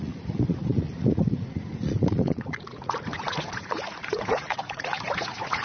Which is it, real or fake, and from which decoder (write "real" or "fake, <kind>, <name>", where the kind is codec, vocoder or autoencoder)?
fake, vocoder, Vocos